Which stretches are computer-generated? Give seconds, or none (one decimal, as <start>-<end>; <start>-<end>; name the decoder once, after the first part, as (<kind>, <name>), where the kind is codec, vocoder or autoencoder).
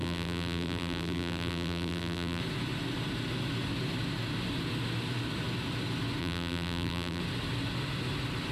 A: 0.0-2.4 (vocoder, BigVGAN v2); 6.2-7.2